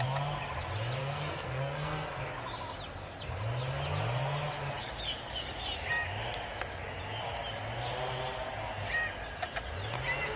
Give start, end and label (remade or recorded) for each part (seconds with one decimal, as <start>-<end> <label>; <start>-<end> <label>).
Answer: 0.0-1.0 recorded; 1.0-2.2 remade; 2.2-10.4 recorded